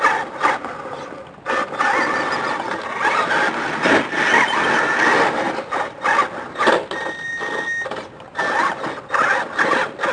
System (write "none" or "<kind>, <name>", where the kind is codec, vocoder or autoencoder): none